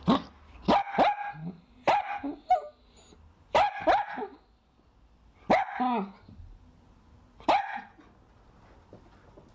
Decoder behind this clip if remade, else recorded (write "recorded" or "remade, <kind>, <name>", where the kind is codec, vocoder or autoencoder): recorded